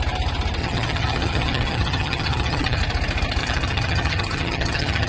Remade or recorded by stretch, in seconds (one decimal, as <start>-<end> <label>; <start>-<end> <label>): 0.0-0.6 recorded; 0.6-2.8 remade; 2.8-3.4 recorded; 3.4-5.1 remade